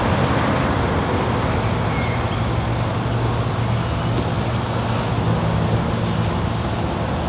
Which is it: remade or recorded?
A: recorded